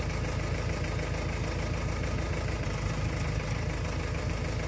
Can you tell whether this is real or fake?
real